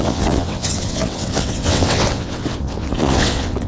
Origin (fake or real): fake